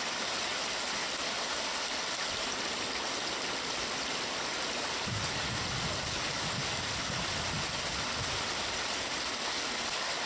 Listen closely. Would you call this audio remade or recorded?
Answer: recorded